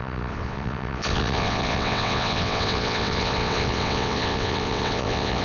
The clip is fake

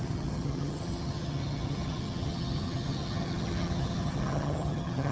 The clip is fake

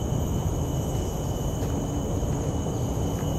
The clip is real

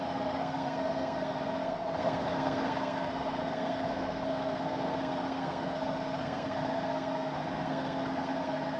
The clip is fake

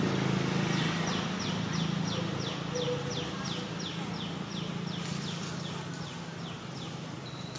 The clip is real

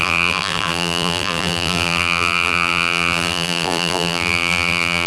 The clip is fake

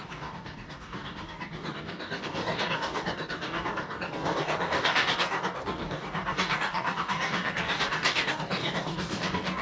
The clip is fake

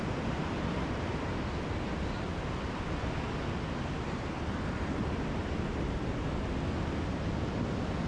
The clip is real